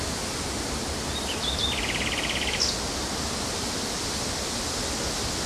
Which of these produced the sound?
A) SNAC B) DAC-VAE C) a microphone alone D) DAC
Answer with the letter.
C